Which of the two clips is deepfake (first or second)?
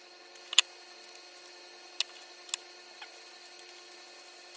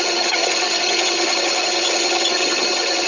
second